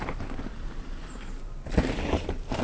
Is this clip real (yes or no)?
yes